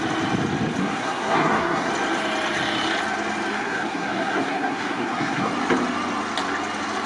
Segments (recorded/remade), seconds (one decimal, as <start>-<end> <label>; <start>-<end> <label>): 0.0-0.8 recorded; 0.8-1.9 remade; 1.9-3.5 recorded; 3.5-5.5 remade; 5.5-7.1 recorded